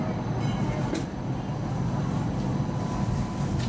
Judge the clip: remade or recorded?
recorded